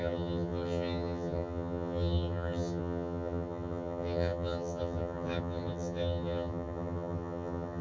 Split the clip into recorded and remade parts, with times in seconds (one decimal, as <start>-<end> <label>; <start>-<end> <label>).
0.0-7.8 remade

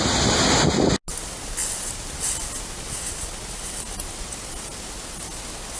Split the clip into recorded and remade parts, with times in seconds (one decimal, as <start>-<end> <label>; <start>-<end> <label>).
0.0-5.8 recorded

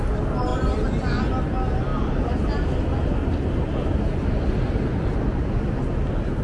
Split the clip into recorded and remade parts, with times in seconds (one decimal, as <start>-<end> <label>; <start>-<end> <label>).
0.0-6.4 recorded

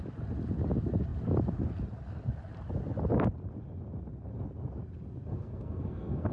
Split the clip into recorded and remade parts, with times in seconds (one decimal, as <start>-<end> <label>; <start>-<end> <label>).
0.0-5.3 recorded; 5.3-6.3 remade

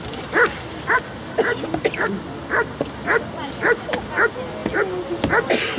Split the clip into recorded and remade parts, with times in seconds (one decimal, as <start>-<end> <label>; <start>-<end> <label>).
0.0-5.8 recorded

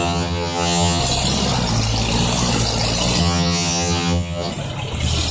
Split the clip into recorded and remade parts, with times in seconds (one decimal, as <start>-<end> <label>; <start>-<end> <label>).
0.0-1.0 remade; 1.0-3.2 recorded; 3.2-4.5 remade; 4.5-5.3 recorded